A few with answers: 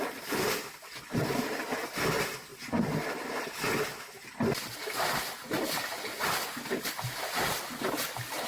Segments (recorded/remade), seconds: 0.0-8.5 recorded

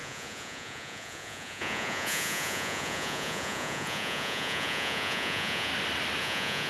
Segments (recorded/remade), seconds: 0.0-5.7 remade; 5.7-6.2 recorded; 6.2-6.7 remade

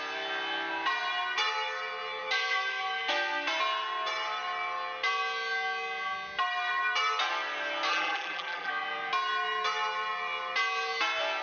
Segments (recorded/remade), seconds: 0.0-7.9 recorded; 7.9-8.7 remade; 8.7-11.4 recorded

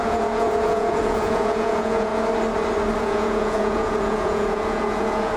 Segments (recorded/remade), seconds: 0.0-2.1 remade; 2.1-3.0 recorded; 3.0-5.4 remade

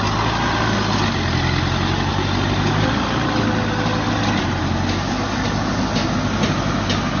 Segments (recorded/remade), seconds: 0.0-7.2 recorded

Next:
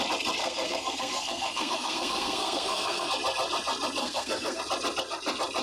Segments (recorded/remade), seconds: 0.0-0.4 recorded; 0.4-3.1 remade; 3.1-4.0 recorded; 4.0-4.6 remade; 4.6-5.6 recorded

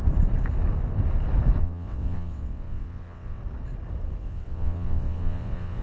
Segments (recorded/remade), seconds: 0.0-1.6 recorded; 1.6-3.4 remade; 3.4-4.2 recorded; 4.2-5.8 remade

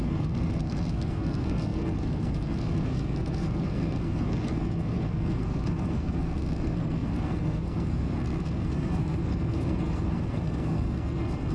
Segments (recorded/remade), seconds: 0.0-11.5 remade